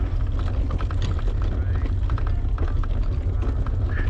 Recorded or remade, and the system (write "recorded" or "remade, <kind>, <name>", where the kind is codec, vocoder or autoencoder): recorded